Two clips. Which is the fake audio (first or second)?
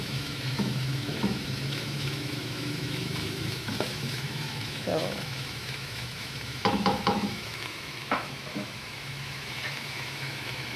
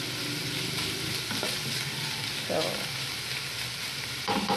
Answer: first